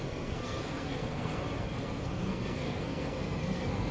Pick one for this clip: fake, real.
fake